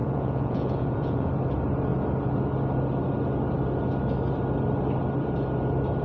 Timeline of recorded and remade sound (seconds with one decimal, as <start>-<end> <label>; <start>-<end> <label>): 0.0-1.3 remade; 1.3-6.0 recorded